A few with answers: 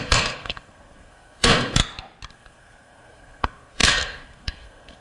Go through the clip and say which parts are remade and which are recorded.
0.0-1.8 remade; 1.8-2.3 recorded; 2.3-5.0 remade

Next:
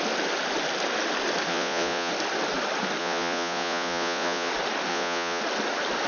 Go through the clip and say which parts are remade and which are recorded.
0.0-1.5 recorded; 1.5-2.1 remade; 2.1-3.0 recorded; 3.0-4.5 remade; 4.5-4.9 recorded; 4.9-5.4 remade; 5.4-6.1 recorded

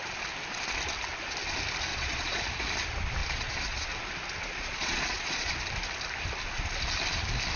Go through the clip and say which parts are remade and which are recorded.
0.0-1.9 recorded; 1.9-2.4 remade; 2.4-3.2 recorded; 3.2-3.9 remade; 3.9-4.4 recorded; 4.4-5.5 remade; 5.5-7.6 recorded

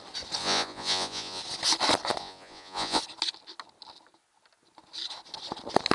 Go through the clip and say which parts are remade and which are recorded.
0.0-0.4 recorded; 0.4-1.4 remade; 1.4-2.2 recorded; 2.2-3.0 remade; 3.0-5.9 recorded

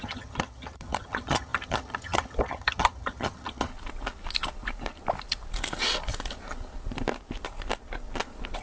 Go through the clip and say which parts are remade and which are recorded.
0.0-3.7 remade; 3.7-8.6 recorded

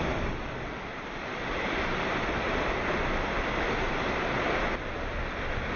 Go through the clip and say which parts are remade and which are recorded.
0.0-0.9 recorded; 0.9-4.2 remade; 4.2-5.8 recorded

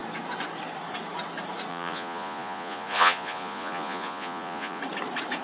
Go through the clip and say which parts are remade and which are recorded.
0.0-1.7 recorded; 1.7-4.8 remade; 4.8-5.4 recorded